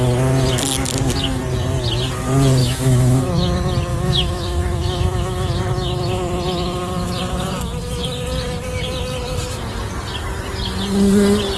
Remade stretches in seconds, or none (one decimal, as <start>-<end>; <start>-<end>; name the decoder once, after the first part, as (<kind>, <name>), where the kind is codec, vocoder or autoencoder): 2.6-3.3 (autoencoder, DAC-VAE); 3.9-5.6